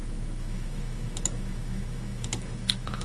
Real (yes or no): no